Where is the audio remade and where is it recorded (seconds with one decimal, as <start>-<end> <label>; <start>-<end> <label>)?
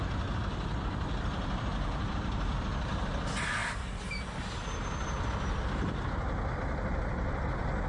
0.0-1.7 recorded; 1.7-3.1 remade; 3.1-7.9 recorded